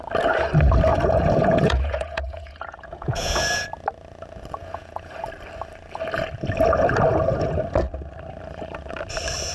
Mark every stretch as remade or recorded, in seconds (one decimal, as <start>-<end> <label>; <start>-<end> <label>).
0.0-0.9 recorded; 0.9-3.7 remade; 3.7-4.6 recorded; 4.6-5.1 remade; 5.1-7.1 recorded; 7.1-7.6 remade; 7.6-9.5 recorded